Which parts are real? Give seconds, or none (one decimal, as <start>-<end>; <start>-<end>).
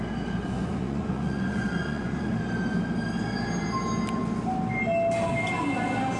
0.0-0.4; 2.3-6.2